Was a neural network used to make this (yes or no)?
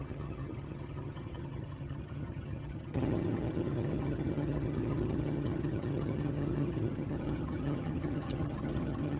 yes